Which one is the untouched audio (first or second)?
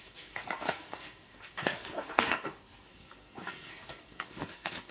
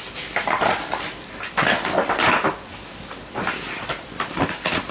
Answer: second